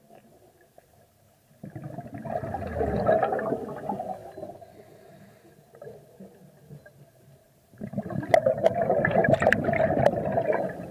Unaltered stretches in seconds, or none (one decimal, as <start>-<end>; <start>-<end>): 0.0-10.9